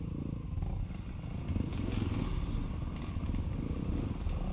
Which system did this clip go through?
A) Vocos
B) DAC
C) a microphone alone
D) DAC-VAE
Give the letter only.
C